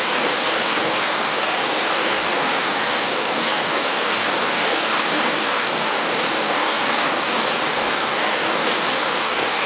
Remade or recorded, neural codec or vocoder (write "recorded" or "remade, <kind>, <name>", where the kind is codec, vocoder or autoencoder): remade, codec, DAC